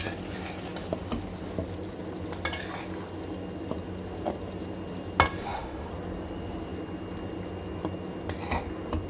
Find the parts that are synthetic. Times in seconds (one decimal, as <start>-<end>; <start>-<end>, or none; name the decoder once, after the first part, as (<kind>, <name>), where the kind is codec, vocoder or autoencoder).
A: 5.4-5.9 (autoencoder, DAC-VAE)